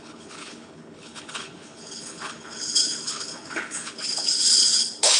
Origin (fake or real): fake